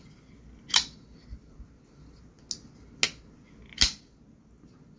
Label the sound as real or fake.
real